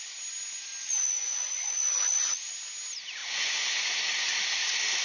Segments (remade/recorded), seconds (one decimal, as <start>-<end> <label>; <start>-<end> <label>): 0.0-0.8 recorded; 0.8-2.5 remade; 2.5-3.2 recorded; 3.2-3.9 remade; 3.9-5.0 recorded